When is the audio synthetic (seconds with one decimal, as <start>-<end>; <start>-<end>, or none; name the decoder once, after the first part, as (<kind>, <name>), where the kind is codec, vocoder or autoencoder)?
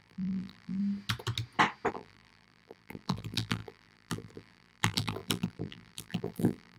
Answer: 0.0-0.8 (vocoder, BigVGAN v2); 1.9-6.8